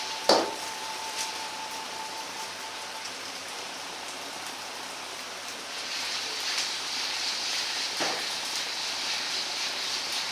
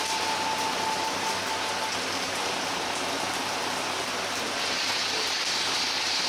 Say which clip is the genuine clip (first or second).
second